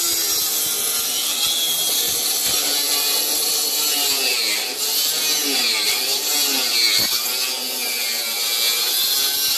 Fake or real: real